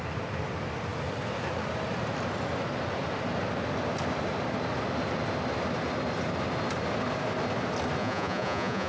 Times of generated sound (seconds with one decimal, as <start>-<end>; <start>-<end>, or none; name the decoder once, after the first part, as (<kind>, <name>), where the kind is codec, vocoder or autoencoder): 8.0-8.9 (vocoder, Vocos)